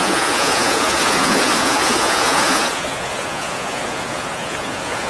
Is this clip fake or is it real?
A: fake